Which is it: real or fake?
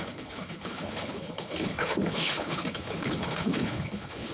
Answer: fake